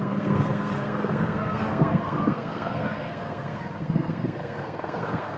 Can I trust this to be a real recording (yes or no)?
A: no